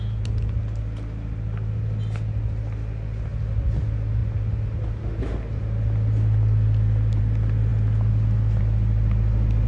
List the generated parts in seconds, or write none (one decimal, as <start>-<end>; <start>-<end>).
none